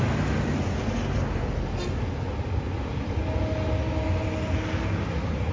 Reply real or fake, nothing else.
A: real